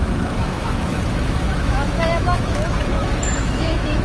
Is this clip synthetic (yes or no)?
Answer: yes